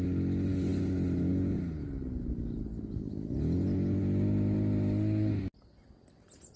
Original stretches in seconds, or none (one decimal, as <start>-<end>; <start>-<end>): 0.0-6.6